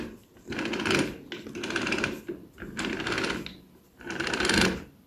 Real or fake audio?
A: real